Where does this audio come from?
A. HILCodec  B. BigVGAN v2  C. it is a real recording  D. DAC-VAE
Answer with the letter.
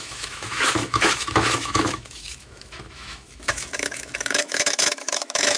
D